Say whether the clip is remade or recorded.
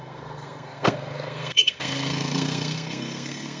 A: remade